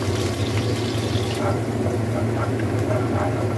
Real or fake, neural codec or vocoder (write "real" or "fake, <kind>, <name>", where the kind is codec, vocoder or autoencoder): real